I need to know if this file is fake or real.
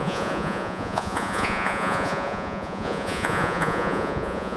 fake